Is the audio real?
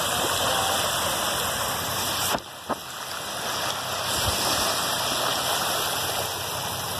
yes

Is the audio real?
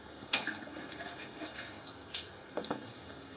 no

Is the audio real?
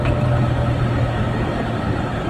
yes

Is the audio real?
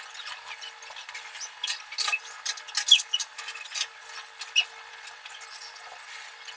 yes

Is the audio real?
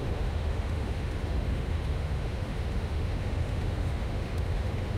no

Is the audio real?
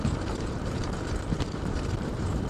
no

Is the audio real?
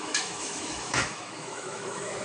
no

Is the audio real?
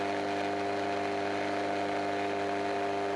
yes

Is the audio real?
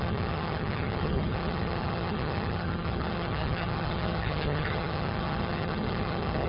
no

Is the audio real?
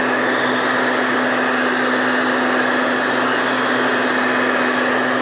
yes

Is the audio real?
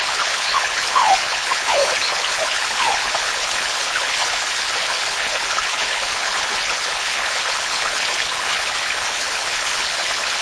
no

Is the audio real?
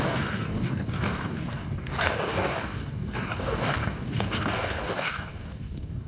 no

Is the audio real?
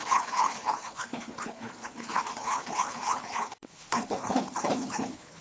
no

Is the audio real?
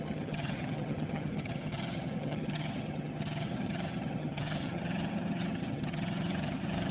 no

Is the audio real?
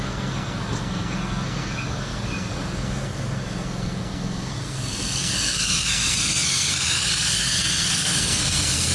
no